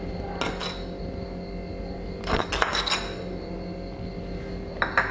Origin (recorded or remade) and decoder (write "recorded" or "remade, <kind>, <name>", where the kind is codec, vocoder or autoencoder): recorded